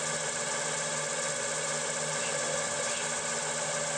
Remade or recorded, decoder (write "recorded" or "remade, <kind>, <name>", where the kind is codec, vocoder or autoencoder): recorded